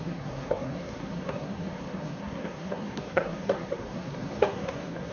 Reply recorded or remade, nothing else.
remade